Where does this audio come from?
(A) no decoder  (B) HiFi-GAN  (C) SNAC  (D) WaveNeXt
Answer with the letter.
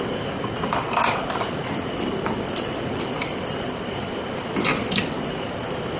A